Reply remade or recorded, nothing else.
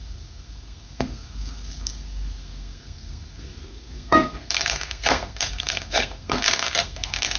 remade